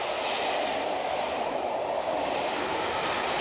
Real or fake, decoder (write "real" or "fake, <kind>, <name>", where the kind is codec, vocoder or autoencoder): real